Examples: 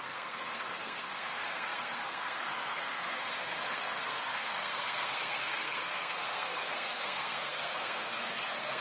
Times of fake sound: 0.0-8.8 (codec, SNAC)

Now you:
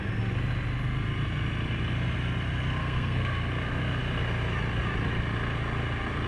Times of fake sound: 2.8-3.5 (codec, SNAC)